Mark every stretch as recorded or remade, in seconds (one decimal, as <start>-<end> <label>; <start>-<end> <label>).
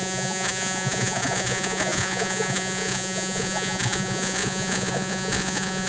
0.0-5.9 remade